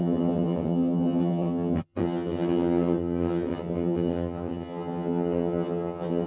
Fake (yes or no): yes